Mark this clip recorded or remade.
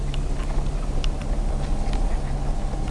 recorded